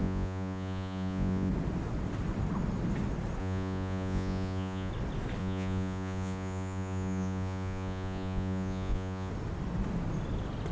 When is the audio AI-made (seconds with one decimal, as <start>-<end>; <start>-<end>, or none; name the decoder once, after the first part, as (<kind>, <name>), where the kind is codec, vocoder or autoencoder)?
0.0-1.5 (vocoder, Vocos); 3.4-4.9; 5.4-9.3